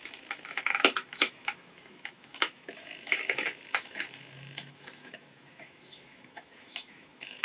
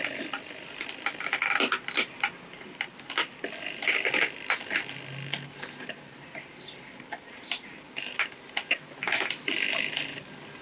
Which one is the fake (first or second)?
first